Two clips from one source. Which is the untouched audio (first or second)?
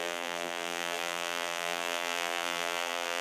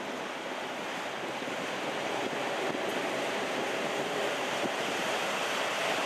second